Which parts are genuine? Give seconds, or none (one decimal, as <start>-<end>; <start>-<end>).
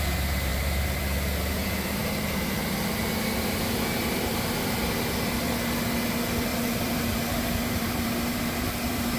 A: 0.0-0.5; 1.0-6.5